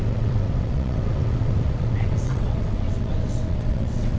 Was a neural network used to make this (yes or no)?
yes